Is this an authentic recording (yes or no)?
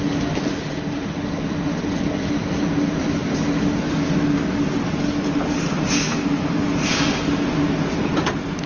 yes